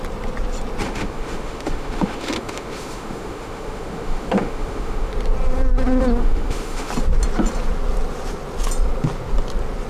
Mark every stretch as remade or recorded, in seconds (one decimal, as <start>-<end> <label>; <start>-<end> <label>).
0.0-0.8 recorded; 0.8-5.1 remade; 5.1-6.2 recorded; 6.2-6.9 remade; 6.9-9.9 recorded